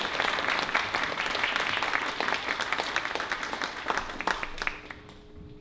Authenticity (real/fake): real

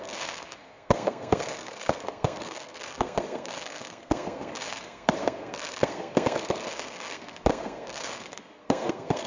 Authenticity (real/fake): fake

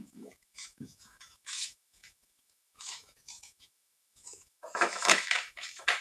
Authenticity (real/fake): fake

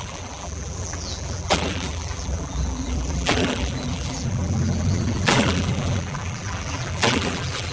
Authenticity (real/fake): fake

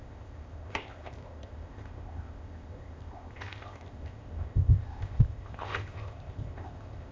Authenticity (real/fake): fake